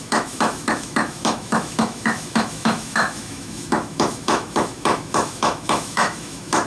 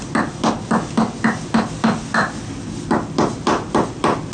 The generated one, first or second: first